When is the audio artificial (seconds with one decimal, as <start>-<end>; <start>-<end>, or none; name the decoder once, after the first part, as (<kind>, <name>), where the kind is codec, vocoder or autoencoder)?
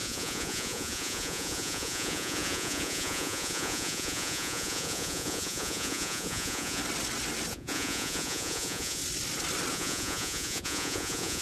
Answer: 0.0-6.8 (vocoder, Vocos); 7.5-9.0; 9.7-11.4